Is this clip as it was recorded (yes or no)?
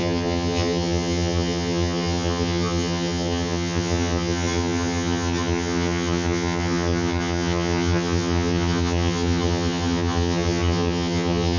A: no